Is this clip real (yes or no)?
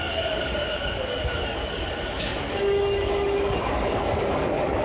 no